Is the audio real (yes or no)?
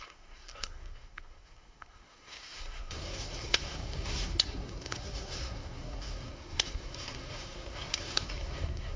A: no